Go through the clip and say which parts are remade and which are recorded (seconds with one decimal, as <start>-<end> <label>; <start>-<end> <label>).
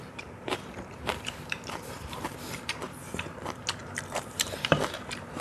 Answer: 0.0-3.0 remade; 3.0-3.8 recorded; 3.8-5.4 remade